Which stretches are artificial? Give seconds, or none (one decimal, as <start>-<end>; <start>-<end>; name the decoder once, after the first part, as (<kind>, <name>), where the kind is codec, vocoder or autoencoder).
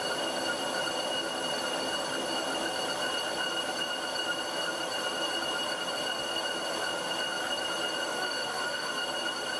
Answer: 8.1-8.9 (autoencoder, DAC-VAE)